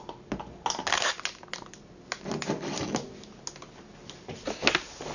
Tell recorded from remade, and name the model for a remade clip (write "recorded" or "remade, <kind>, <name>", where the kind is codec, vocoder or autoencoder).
recorded